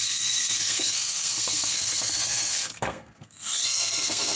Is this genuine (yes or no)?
no